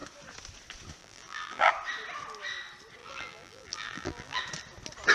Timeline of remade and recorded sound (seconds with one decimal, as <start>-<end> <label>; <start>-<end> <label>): 0.0-1.0 recorded; 1.0-1.7 remade; 1.7-3.0 recorded; 3.0-4.4 remade; 4.4-5.1 recorded